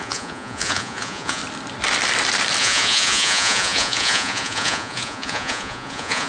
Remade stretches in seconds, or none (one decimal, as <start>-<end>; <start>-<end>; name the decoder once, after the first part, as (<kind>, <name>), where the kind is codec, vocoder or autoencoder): 0.0-1.4 (vocoder, Vocos); 2.6-6.3